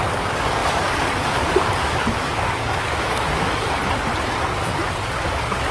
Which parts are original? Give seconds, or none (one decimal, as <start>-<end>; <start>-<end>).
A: 3.8-4.3